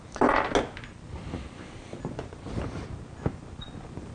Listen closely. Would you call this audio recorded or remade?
recorded